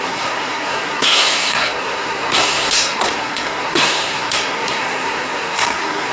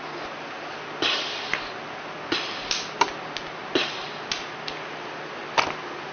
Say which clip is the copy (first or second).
first